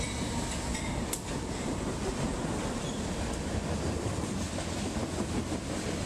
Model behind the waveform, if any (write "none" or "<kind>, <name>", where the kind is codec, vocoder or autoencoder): none